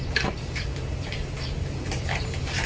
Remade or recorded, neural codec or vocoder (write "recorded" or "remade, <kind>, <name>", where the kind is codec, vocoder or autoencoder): remade, vocoder, BigVGAN v2